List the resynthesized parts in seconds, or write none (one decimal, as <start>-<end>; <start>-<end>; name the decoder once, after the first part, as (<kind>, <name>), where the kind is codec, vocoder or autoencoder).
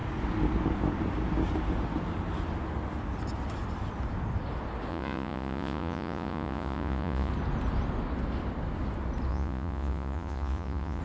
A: 4.9-7.3 (vocoder, Vocos); 9.3-11.0